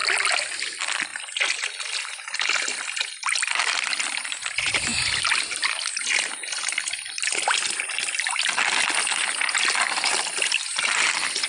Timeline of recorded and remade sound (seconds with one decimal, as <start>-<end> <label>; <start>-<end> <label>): 0.0-11.5 recorded